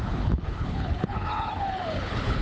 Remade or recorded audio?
remade